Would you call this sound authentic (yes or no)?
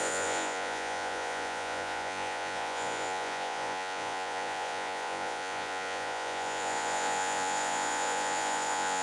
no